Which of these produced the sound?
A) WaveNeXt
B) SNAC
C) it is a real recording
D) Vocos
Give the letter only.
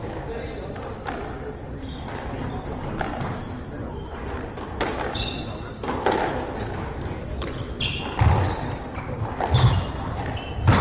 C